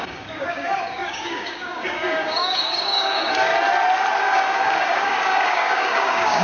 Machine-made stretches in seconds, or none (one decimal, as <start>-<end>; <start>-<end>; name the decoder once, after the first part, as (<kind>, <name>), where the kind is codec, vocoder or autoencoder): 0.0-3.5 (codec, DAC); 4.2-6.4